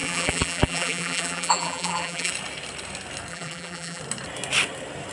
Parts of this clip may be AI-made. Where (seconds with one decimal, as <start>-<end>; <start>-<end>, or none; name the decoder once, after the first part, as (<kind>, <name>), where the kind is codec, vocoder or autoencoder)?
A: 0.0-2.3 (vocoder, BigVGAN v2); 3.3-4.0